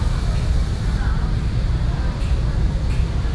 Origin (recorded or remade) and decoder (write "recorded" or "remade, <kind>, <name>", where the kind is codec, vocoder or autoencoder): recorded